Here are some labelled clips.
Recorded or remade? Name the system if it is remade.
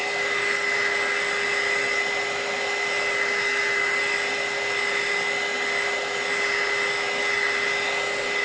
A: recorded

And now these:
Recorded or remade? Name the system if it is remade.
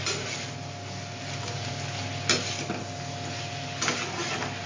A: recorded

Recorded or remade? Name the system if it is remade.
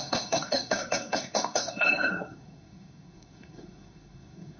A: remade, codec, SNAC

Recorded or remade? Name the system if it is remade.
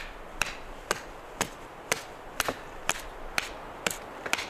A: recorded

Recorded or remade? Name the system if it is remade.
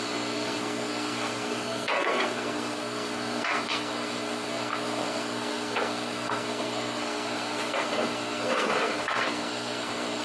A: remade, codec, SNAC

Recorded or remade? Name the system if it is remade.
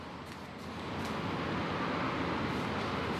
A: recorded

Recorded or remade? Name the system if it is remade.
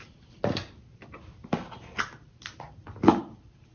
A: recorded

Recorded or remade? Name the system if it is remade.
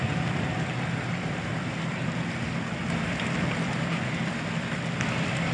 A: recorded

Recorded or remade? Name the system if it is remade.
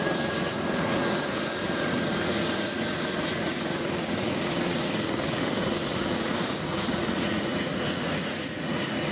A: remade, vocoder, Vocos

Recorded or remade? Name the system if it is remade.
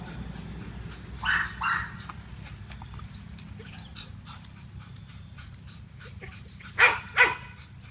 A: recorded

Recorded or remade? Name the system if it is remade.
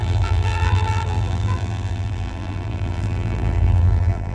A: remade, vocoder, BigVGAN v2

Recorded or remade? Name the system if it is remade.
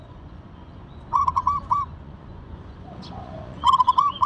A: remade, vocoder, Vocos